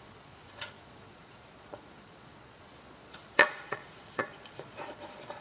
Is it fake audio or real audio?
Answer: fake